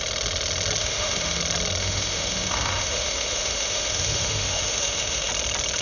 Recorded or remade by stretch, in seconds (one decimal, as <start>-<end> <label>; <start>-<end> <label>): 0.0-0.8 recorded; 0.8-1.4 remade; 1.4-1.8 recorded; 1.8-5.3 remade; 5.3-5.8 recorded